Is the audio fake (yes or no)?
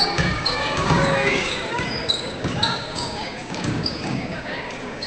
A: yes